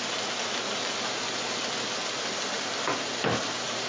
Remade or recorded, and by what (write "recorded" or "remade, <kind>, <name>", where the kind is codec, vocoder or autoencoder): recorded